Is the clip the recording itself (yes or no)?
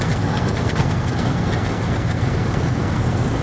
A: no